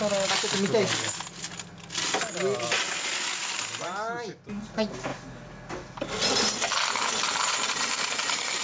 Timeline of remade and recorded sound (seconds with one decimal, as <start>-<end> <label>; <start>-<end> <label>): 0.0-8.6 recorded